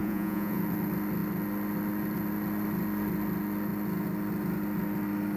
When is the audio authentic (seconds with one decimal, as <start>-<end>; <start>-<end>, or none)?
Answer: 0.6-5.4